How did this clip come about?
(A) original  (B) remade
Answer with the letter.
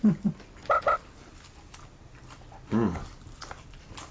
A